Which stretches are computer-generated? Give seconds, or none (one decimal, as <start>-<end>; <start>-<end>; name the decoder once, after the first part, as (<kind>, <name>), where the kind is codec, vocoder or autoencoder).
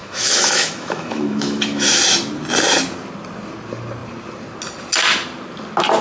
0.0-2.0 (autoencoder, DAC-VAE)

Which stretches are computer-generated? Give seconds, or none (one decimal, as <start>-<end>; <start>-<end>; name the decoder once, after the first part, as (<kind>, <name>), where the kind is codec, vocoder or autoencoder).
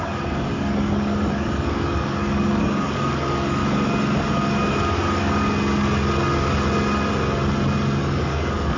0.0-3.6 (codec, DAC); 8.0-8.8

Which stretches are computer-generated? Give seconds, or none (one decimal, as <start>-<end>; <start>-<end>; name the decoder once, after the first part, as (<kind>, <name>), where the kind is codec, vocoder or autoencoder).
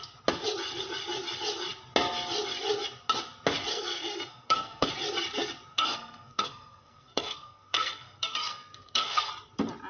3.7-4.9 (codec, SNAC); 5.7-9.3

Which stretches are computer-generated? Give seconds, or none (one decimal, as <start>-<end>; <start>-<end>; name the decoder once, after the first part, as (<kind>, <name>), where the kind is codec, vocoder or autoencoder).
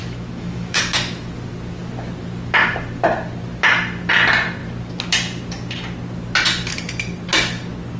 0.0-0.8 (autoencoder, DAC-VAE)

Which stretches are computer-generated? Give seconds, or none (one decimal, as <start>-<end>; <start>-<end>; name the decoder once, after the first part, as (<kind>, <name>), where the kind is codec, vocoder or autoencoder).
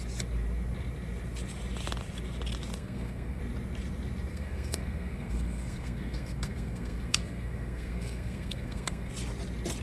2.8-3.4 (codec, SNAC); 4.3-9.1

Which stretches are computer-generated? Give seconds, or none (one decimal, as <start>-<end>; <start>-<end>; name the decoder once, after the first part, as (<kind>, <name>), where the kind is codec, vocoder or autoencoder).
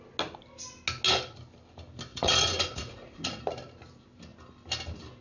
2.1-3.4 (vocoder, Vocos)